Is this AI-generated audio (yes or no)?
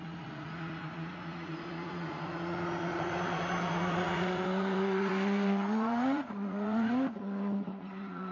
yes